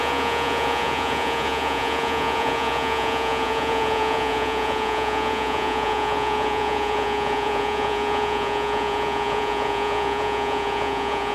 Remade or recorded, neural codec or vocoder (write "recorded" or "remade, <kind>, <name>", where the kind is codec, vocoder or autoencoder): remade, vocoder, Vocos